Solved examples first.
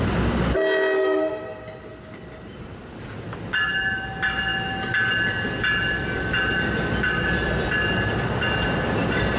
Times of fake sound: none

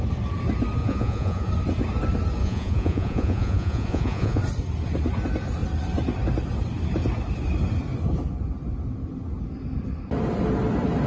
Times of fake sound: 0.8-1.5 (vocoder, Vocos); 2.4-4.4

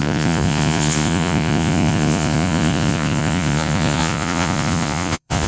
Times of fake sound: 0.0-5.5 (vocoder, Vocos)

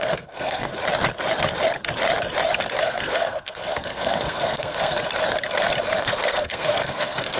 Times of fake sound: 0.0-0.7 (codec, SNAC); 2.8-5.0; 6.0-7.4